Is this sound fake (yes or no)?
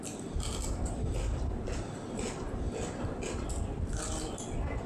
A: no